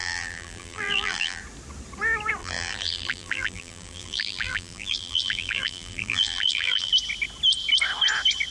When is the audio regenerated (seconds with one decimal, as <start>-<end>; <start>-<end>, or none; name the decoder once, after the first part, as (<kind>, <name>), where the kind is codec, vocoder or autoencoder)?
0.0-1.4 (vocoder, BigVGAN v2); 2.4-6.9